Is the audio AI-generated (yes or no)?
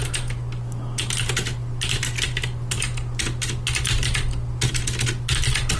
no